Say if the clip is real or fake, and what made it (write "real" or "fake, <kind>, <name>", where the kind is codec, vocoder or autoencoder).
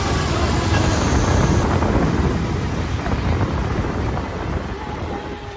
real